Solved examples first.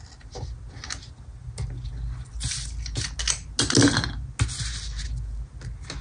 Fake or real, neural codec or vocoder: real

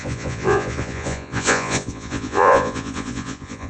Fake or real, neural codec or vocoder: fake, vocoder, Vocos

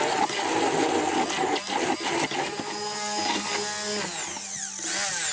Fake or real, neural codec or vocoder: real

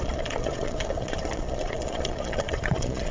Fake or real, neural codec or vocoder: fake, vocoder, Vocos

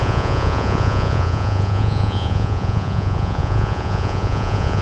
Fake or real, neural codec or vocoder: fake, vocoder, Vocos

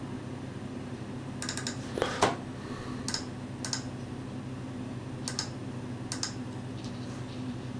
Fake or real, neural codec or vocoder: real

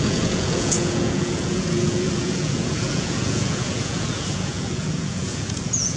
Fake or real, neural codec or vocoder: fake, vocoder, Vocos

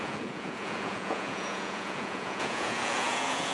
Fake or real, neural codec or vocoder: fake, vocoder, Vocos